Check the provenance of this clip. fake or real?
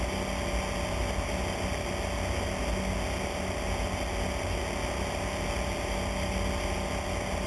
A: real